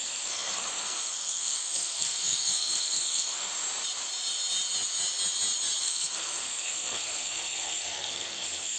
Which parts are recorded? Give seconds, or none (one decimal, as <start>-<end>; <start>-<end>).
3.5-5.8